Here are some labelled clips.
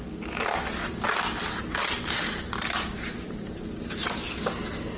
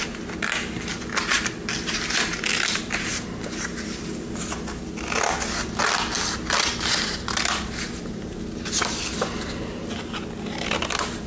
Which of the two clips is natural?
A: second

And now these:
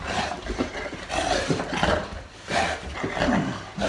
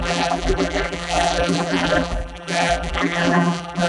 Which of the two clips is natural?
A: first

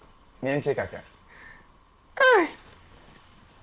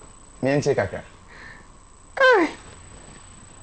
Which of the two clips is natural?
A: second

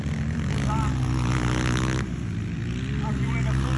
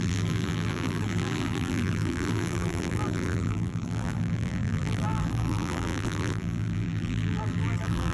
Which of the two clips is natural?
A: first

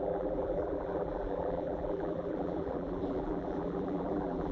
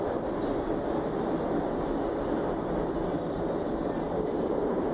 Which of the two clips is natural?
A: second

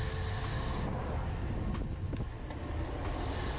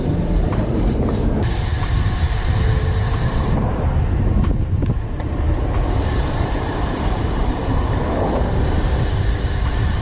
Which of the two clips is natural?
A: first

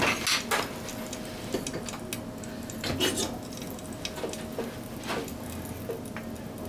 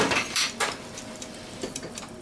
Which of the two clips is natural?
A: first